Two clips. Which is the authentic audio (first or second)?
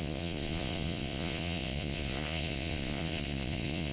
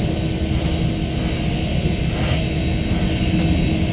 second